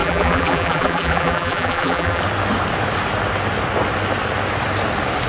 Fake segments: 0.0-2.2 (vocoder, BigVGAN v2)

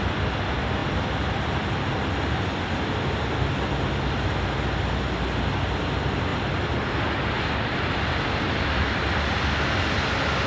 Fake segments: none

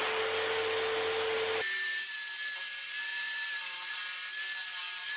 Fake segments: 3.1-3.9 (vocoder, BigVGAN v2)

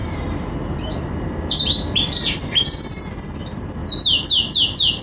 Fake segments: 0.0-3.0 (vocoder, BigVGAN v2); 3.8-5.0

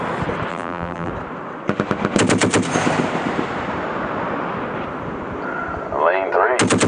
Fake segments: 0.5-1.1 (vocoder, BigVGAN v2)

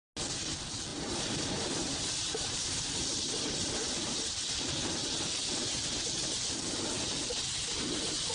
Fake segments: 0.9-4.2 (vocoder, BigVGAN v2)

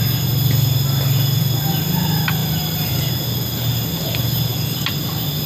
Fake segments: 2.4-3.1 (vocoder, BigVGAN v2)